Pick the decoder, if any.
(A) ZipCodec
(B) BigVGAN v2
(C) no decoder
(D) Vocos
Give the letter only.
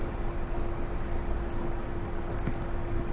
C